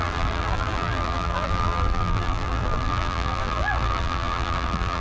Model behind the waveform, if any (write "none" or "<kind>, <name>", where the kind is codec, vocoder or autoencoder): vocoder, BigVGAN v2